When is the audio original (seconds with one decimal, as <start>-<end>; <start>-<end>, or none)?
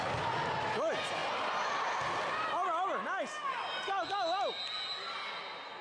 0.0-5.8